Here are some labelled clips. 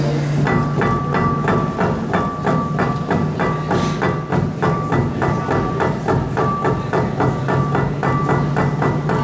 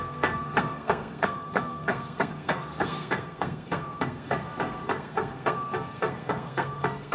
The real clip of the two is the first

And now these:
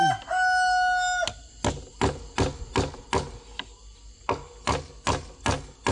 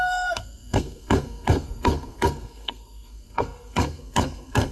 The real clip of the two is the first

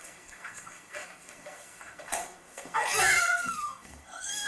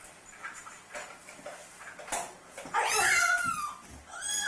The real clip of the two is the second